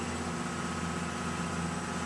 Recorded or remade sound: recorded